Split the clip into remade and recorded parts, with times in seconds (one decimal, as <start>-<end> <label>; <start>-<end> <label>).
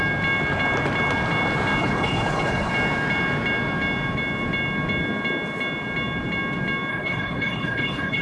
0.0-1.8 recorded; 1.8-2.7 remade; 2.7-6.9 recorded; 6.9-8.2 remade